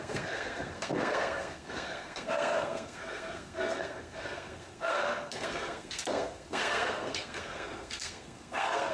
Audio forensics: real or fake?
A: fake